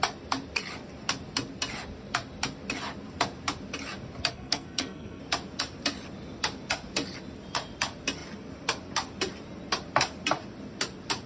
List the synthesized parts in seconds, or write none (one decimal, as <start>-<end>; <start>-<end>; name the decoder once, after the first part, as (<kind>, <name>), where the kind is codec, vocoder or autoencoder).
4.3-5.2 (codec, SNAC)